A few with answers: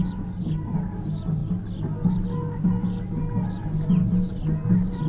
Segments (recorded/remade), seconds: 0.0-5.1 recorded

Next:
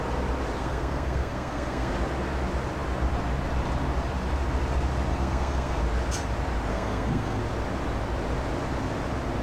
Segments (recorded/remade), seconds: 0.0-0.6 recorded; 0.6-1.9 remade; 1.9-5.1 recorded; 5.1-5.8 remade; 5.8-6.7 recorded; 6.7-7.4 remade; 7.4-9.4 recorded

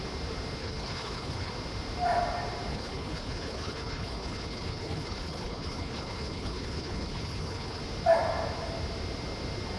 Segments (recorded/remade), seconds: 0.0-0.6 recorded; 0.6-1.5 remade; 1.5-2.7 recorded; 2.7-7.8 remade; 7.8-9.8 recorded

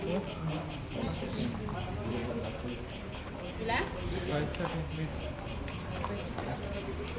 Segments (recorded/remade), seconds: 0.0-6.4 recorded; 6.4-7.2 remade